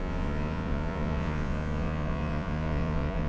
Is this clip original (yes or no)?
no